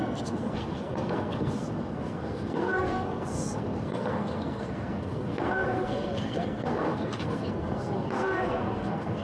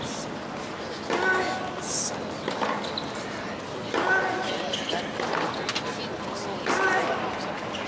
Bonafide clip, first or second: second